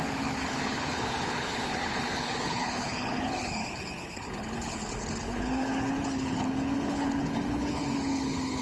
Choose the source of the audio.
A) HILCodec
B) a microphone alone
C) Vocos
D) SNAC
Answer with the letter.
A